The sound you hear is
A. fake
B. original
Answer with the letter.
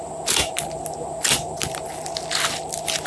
B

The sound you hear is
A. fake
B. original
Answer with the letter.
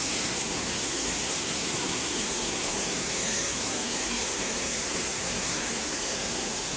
A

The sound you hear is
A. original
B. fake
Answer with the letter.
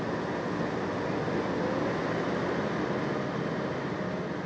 A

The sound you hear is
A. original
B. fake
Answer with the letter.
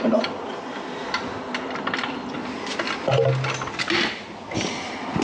A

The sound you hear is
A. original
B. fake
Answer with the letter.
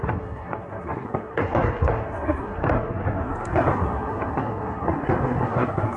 B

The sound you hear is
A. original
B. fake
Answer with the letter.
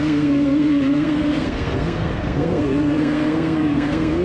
B